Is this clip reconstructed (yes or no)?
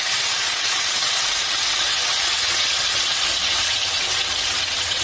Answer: yes